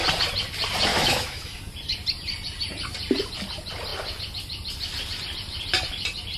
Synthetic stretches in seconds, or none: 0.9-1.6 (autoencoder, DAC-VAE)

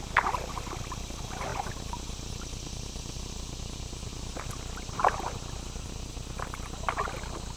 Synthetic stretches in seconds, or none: none